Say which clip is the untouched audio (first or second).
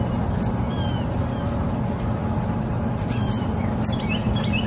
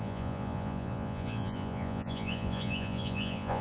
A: first